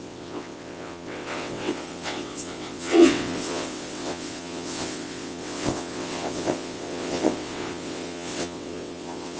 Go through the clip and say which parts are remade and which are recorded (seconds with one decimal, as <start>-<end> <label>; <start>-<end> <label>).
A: 0.0-9.4 remade